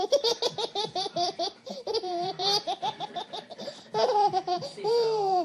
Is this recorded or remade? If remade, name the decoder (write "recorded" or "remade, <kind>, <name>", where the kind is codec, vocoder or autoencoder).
remade, vocoder, BigVGAN v2